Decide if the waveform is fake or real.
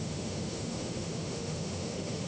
fake